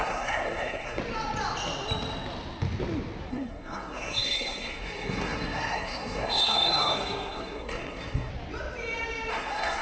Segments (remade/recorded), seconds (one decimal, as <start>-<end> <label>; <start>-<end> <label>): 0.0-1.0 remade; 1.0-3.3 recorded; 3.3-8.3 remade; 8.3-9.3 recorded; 9.3-9.8 remade